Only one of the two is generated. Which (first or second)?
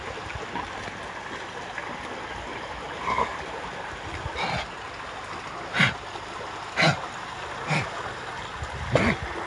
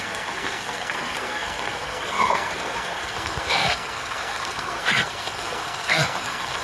second